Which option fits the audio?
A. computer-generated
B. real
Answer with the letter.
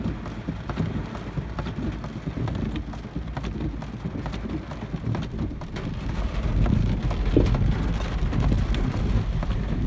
B